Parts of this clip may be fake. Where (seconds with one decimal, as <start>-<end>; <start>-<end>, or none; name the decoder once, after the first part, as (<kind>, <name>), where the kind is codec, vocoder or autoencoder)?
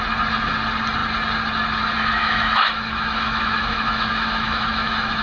2.2-5.2 (autoencoder, DAC-VAE)